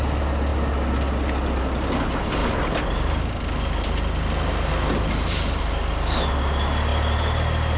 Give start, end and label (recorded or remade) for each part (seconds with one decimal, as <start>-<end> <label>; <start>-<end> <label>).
0.0-7.8 recorded